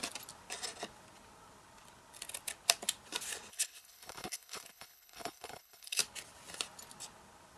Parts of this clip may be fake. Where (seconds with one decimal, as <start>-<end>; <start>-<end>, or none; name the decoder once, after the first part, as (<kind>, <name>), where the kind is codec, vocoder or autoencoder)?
3.5-6.0 (codec, HILCodec)